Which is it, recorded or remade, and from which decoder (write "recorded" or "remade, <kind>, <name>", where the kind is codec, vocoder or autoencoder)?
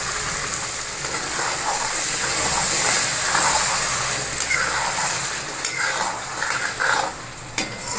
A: recorded